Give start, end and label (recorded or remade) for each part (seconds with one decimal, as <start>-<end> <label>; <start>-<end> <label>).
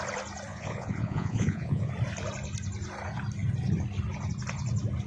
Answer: 0.0-0.5 recorded; 0.5-1.9 remade; 1.9-5.1 recorded